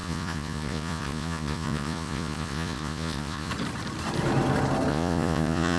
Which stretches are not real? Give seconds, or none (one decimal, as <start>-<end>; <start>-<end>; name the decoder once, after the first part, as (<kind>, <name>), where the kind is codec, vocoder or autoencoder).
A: 0.0-3.5 (vocoder, Vocos); 4.9-5.8

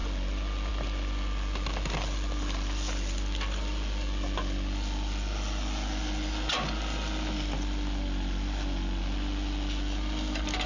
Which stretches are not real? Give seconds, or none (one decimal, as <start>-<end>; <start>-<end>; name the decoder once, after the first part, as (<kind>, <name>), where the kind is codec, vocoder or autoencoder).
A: none

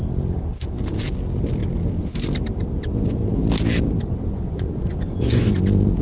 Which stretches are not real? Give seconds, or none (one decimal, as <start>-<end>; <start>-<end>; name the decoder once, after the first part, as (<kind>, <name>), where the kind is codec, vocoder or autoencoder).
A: 4.3-5.5 (vocoder, Vocos)